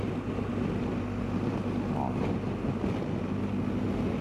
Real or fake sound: real